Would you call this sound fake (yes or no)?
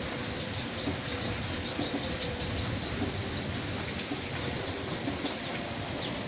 no